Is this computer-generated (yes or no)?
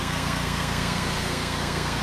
yes